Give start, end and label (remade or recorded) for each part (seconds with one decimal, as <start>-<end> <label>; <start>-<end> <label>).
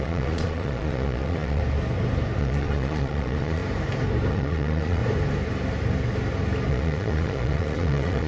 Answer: 0.0-1.6 remade; 1.6-2.4 recorded; 2.4-3.6 remade; 3.6-4.3 recorded; 4.3-5.0 remade; 5.0-6.7 recorded; 6.7-8.3 remade